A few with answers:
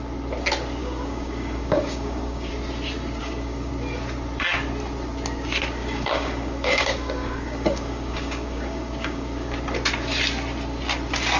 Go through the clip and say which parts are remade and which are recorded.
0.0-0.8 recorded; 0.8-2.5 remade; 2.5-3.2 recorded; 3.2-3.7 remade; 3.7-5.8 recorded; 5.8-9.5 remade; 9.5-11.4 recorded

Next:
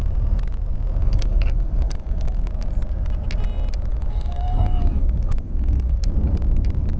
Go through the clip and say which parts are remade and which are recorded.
0.0-1.0 recorded; 1.0-2.5 remade; 2.5-3.9 recorded; 3.9-6.1 remade; 6.1-7.0 recorded

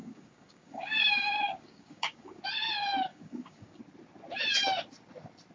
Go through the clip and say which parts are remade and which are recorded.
0.0-2.4 remade; 2.4-3.1 recorded; 3.1-3.8 remade; 3.8-5.5 recorded

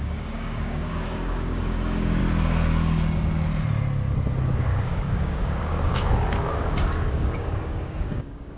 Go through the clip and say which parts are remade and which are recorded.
0.0-2.2 remade; 2.2-4.6 recorded; 4.6-8.6 remade